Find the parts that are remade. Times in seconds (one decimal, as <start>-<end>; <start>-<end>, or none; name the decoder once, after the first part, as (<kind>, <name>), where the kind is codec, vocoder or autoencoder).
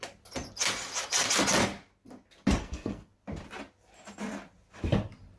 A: 2.6-3.1 (codec, SNAC)